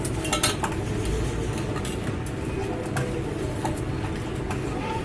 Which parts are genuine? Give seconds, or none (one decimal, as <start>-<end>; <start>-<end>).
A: 0.0-5.0